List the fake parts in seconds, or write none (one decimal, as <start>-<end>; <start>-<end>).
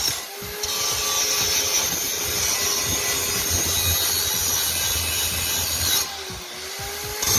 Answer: none